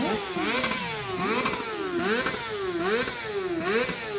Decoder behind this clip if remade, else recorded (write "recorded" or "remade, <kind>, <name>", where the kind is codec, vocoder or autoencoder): recorded